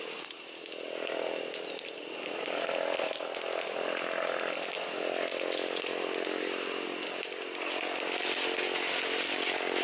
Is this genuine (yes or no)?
yes